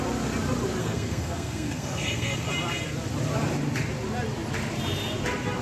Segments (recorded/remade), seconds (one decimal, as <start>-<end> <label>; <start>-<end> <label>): 0.0-0.8 recorded; 0.8-2.5 remade; 2.5-5.6 recorded